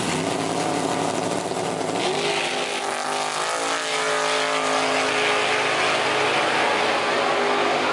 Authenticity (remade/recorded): recorded